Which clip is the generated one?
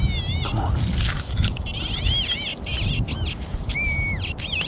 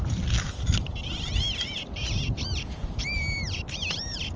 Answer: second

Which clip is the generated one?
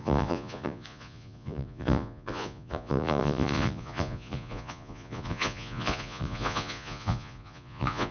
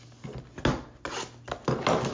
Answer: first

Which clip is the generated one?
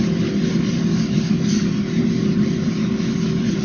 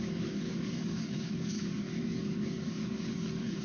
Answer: second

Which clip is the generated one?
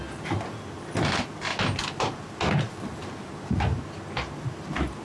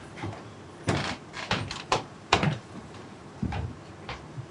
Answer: second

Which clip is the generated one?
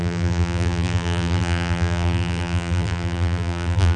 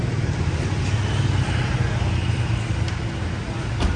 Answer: first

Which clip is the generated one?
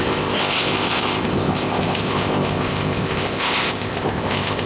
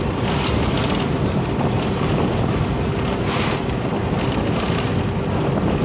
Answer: first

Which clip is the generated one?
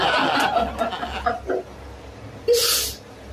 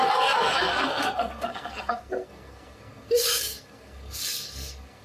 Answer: second